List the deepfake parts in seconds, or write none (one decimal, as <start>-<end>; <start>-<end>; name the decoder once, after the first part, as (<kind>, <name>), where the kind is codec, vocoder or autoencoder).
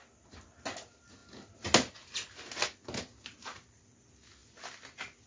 none